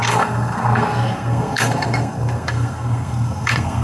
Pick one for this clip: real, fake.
fake